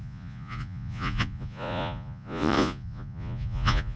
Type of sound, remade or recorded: remade